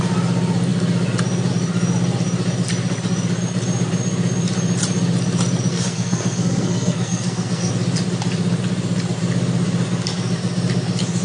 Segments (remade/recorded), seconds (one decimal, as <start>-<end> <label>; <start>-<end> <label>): 0.0-5.7 recorded; 5.7-7.7 remade; 7.7-11.2 recorded

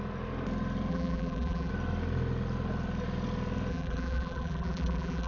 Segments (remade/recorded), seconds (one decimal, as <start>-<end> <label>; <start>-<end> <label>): 0.0-0.9 recorded; 0.9-1.7 remade; 1.7-3.7 recorded; 3.7-5.3 remade